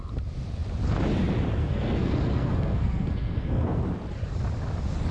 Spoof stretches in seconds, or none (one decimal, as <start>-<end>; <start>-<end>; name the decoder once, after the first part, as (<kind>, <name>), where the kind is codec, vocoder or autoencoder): 1.6-3.8 (codec, SNAC)